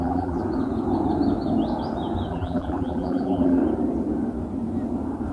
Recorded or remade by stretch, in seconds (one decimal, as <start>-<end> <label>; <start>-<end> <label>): 0.0-0.4 remade; 0.4-2.3 recorded; 2.3-3.6 remade; 3.6-5.3 recorded